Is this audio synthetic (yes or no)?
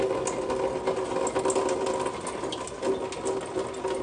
no